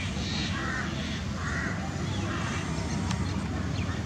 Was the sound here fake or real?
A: real